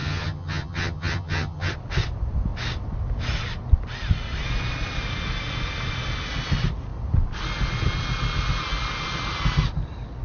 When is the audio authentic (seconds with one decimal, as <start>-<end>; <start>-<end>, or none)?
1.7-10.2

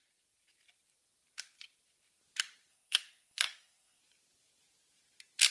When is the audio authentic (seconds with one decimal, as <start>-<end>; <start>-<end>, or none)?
0.0-2.7; 4.0-5.5

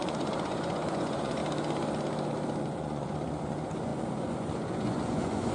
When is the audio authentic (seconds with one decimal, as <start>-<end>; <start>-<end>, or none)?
1.4-2.6